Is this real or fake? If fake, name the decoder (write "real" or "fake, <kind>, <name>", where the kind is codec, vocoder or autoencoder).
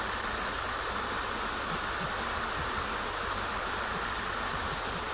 real